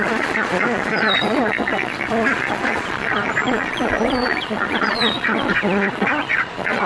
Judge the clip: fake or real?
fake